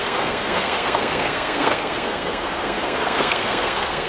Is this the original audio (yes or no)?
no